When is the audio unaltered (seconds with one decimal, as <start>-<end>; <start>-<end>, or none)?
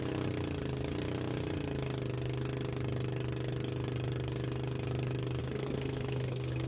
0.0-5.4